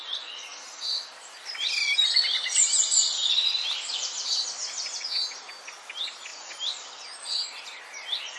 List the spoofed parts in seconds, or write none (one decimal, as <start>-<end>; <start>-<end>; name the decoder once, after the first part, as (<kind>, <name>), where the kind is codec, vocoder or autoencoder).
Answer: 0.5-5.0 (vocoder, BigVGAN v2); 6.3-7.8